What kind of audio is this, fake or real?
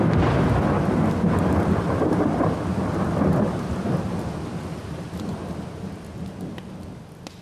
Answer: real